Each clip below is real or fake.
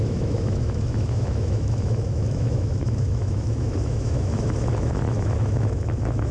fake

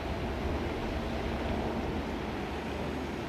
real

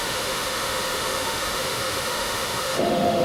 fake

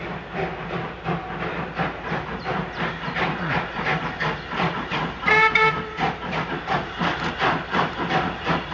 real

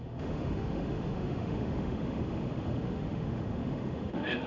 fake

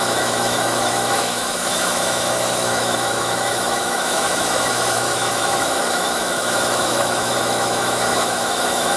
fake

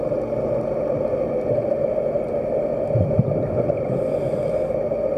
real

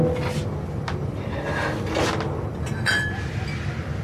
real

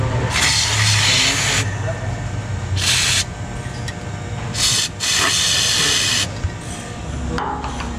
real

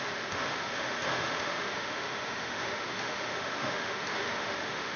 fake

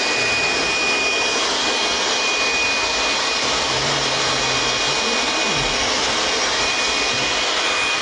real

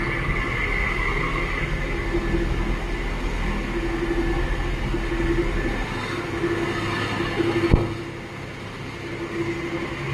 real